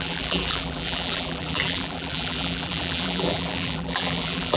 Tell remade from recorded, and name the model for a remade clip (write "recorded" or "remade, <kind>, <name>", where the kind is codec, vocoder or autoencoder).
remade, vocoder, BigVGAN v2